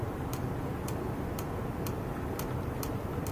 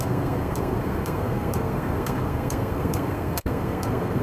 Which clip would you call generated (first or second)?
second